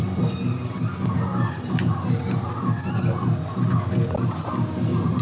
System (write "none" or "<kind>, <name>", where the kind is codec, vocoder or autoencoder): none